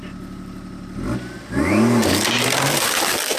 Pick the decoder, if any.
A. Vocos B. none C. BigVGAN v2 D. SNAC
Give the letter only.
B